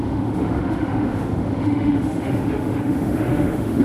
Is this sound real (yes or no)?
no